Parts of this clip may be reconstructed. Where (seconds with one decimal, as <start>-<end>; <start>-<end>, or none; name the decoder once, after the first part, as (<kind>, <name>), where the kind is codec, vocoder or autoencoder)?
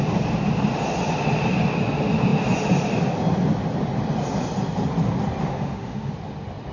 5.4-6.1 (autoencoder, DAC-VAE)